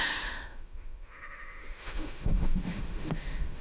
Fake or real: fake